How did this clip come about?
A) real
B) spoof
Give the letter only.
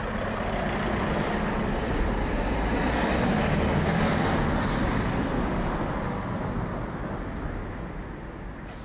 A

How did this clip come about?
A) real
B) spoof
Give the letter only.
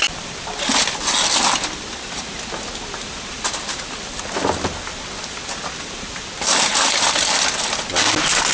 A